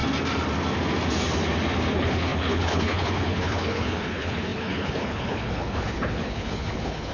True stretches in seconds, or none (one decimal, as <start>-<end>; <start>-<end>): 0.0-1.9